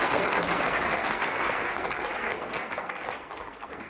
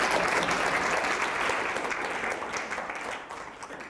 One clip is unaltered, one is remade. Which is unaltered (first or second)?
second